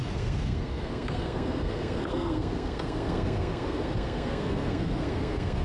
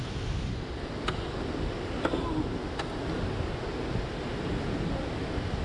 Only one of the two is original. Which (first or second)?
second